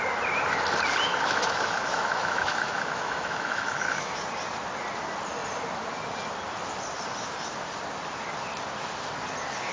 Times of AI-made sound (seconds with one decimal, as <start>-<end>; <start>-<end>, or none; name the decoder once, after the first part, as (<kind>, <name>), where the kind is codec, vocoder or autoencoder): 1.1-4.2 (autoencoder, DAC-VAE)